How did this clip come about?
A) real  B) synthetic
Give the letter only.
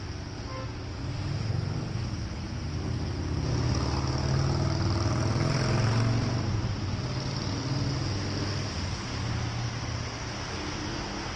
A